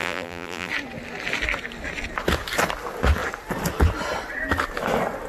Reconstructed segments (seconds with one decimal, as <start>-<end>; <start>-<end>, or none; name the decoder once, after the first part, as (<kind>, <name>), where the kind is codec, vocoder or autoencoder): 0.0-0.7 (vocoder, BigVGAN v2)

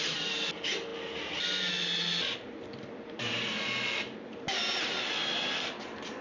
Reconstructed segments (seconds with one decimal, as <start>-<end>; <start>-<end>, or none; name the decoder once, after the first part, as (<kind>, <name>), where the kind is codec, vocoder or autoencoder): none

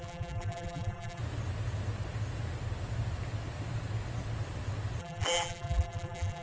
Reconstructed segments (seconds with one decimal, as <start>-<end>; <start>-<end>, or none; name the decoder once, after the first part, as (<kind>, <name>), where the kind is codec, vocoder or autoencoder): 0.0-1.2 (vocoder, BigVGAN v2); 5.0-6.4

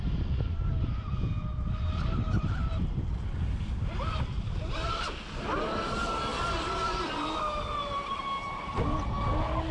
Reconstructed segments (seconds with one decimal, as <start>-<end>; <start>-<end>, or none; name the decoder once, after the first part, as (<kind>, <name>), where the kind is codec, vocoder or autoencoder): none

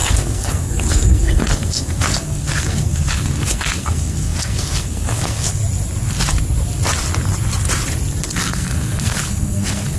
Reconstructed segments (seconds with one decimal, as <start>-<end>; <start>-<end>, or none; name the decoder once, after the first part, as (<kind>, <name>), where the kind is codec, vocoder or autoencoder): 0.0-5.6 (codec, SNAC); 8.2-10.0

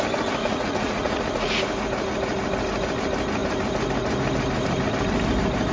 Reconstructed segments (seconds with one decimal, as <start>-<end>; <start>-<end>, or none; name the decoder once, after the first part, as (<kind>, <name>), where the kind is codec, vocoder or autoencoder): 0.4-1.6 (vocoder, Vocos)

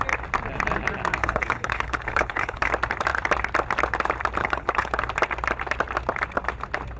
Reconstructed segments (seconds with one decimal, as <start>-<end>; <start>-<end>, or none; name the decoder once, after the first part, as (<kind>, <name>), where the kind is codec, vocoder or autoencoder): 1.2-2.7 (codec, HILCodec); 4.4-4.9